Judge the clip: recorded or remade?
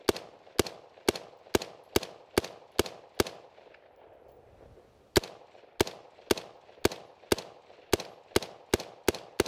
recorded